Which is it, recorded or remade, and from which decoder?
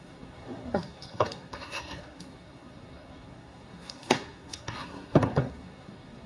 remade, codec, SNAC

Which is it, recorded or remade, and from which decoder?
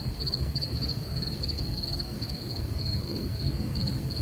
remade, codec, SNAC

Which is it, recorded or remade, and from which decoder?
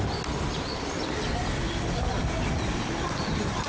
recorded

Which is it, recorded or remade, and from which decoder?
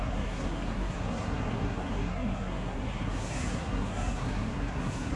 remade, codec, SNAC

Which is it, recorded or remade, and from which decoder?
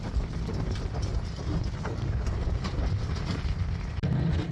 recorded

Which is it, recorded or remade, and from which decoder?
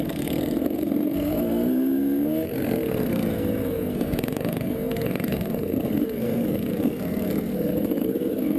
remade, codec, SNAC